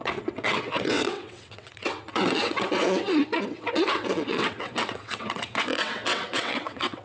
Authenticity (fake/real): fake